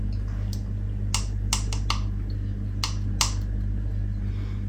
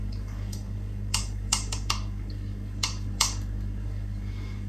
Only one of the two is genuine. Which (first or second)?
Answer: first